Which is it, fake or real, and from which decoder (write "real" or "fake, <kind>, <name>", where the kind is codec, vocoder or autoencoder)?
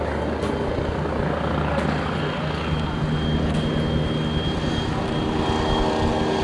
real